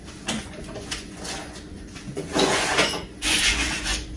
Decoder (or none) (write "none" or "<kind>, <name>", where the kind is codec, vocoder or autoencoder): vocoder, Vocos